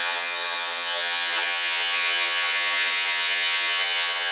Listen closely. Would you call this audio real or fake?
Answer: fake